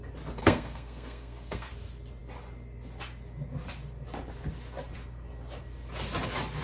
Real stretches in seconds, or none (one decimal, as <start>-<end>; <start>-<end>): 0.0-0.4; 1.7-6.6